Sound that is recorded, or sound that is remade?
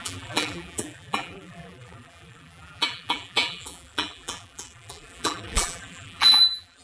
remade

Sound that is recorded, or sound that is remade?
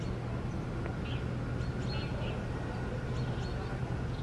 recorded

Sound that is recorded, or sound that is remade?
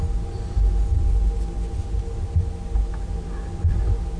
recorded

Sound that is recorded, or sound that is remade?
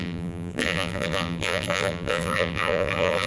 remade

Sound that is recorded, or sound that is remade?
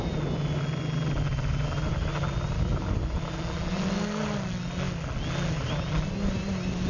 recorded